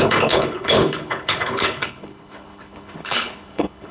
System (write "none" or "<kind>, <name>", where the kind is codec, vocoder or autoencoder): codec, HILCodec